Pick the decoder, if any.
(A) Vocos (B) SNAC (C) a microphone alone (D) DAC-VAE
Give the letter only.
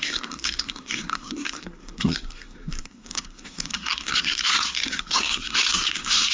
B